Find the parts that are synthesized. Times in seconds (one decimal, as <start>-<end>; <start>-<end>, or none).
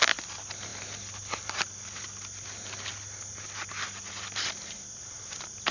none